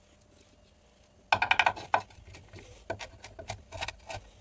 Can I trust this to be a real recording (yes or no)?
yes